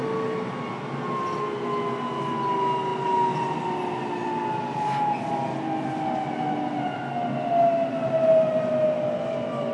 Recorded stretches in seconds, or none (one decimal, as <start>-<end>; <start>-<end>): 0.0-9.7